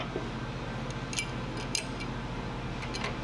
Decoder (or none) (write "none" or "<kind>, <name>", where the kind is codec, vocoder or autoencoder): none